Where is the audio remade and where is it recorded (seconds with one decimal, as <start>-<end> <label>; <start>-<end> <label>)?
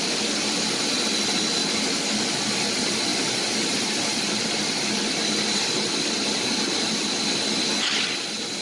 0.0-1.6 recorded; 1.6-2.4 remade; 2.4-3.1 recorded; 3.1-5.9 remade; 5.9-8.6 recorded